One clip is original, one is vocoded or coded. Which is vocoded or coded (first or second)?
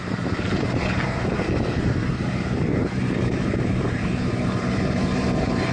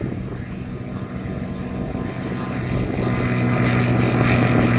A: first